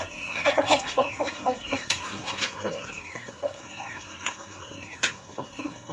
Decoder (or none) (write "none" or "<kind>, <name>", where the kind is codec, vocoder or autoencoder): codec, SNAC